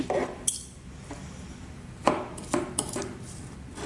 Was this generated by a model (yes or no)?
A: yes